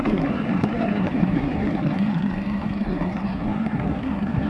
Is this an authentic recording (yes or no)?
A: no